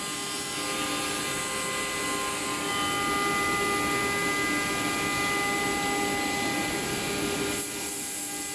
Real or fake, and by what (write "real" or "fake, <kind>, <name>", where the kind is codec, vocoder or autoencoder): real